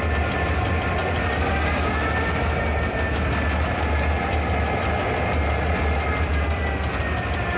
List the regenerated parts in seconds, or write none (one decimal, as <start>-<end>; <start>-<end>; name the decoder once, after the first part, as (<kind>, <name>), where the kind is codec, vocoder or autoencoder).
none